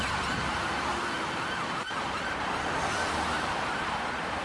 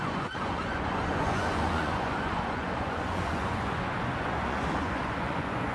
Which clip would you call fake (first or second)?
second